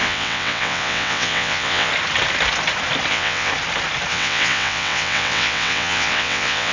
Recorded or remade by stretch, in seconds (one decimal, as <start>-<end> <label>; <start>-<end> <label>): 0.0-1.9 remade; 1.9-3.1 recorded; 3.1-3.5 remade; 3.5-4.1 recorded; 4.1-6.7 remade